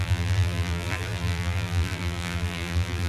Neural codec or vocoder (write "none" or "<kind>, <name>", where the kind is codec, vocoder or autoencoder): vocoder, BigVGAN v2